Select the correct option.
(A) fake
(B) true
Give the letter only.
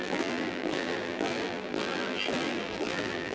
A